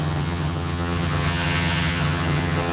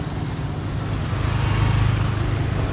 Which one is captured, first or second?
second